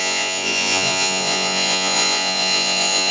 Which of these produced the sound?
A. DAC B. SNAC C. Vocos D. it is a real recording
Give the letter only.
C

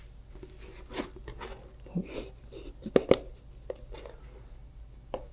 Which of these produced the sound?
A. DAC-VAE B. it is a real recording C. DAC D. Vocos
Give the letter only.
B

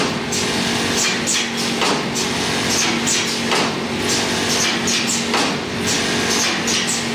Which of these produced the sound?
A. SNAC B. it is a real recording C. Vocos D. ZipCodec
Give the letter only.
B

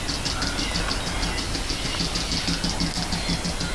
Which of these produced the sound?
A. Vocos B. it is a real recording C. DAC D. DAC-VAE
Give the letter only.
B